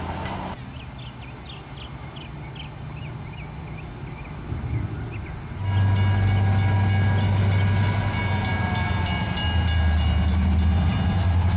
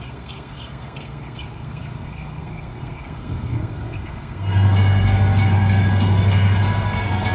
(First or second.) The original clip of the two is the first